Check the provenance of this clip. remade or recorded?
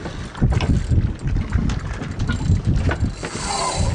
recorded